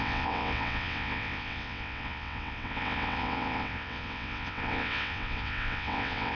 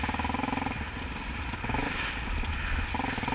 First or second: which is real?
second